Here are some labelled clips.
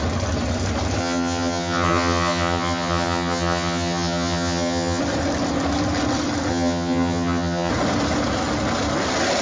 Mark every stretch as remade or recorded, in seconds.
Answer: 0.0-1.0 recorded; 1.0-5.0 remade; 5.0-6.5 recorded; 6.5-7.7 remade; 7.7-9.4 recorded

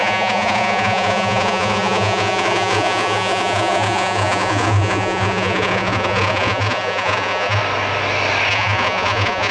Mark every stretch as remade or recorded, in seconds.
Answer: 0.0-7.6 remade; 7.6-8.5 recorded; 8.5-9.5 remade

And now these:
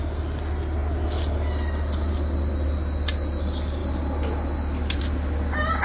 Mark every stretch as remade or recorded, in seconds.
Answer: 0.0-5.8 recorded

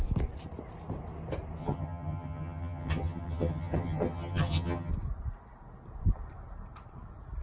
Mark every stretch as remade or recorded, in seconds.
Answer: 0.0-1.6 recorded; 1.6-4.9 remade; 4.9-7.4 recorded

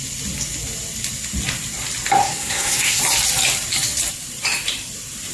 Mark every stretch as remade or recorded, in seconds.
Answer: 0.0-2.2 recorded; 2.2-3.0 remade; 3.0-5.3 recorded

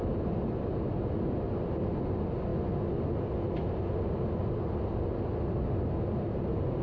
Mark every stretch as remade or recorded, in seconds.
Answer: 0.0-6.8 recorded